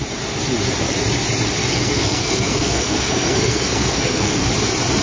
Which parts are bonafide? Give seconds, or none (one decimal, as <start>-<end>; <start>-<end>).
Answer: 0.0-1.6; 4.5-5.0